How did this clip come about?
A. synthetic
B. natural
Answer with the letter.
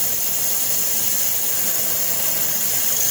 B